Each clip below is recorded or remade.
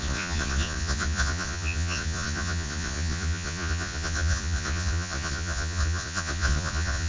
remade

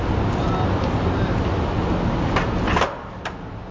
recorded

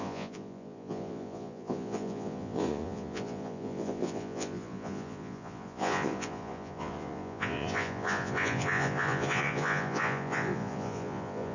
remade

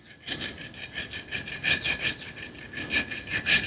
recorded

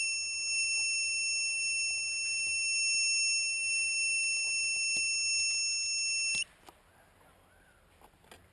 recorded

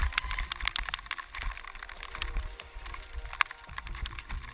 recorded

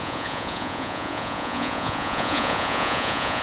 remade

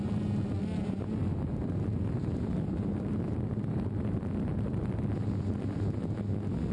recorded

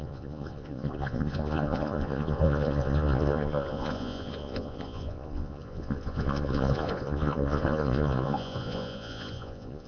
remade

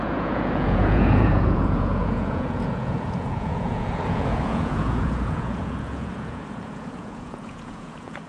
remade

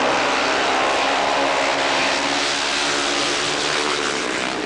recorded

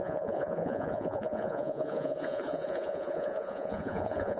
remade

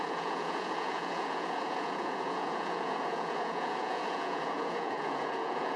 remade